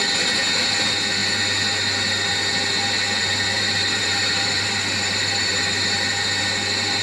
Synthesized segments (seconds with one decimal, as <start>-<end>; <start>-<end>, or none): 3.2-6.1